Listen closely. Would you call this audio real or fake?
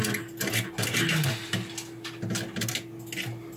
real